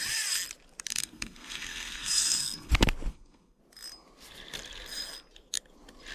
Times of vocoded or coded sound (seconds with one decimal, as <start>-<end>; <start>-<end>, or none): 0.9-2.7; 3.1-3.6